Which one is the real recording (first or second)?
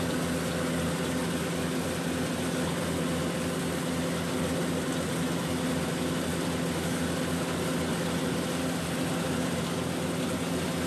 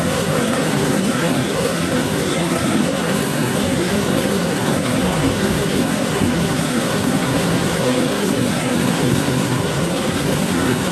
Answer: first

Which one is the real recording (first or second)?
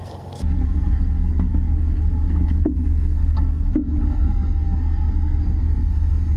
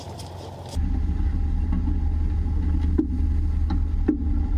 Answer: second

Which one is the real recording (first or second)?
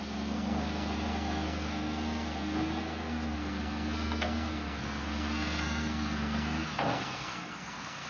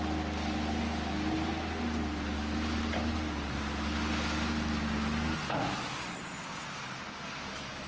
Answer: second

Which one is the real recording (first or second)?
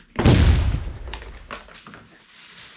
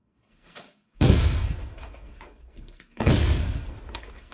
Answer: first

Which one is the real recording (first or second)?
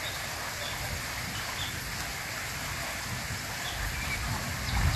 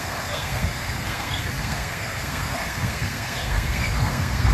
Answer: first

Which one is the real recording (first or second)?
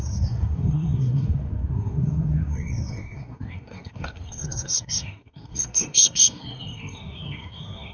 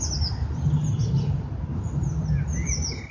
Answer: second